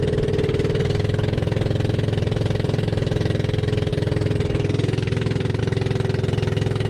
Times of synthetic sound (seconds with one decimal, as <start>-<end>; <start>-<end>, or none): 3.9-5.6